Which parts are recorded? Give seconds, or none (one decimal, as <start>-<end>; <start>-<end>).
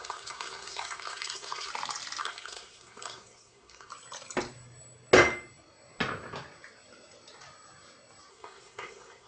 1.7-2.2; 3.9-8.3